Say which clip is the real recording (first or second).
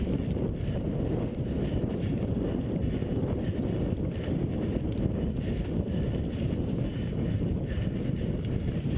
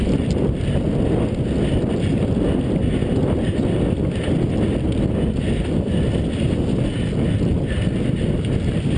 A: second